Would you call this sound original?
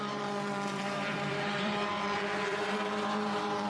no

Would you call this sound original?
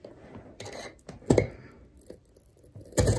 yes